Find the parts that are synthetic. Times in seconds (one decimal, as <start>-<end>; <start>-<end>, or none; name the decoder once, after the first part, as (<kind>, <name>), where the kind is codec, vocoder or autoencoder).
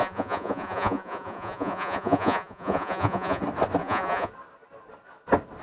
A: 0.0-3.4 (vocoder, Vocos); 3.8-4.3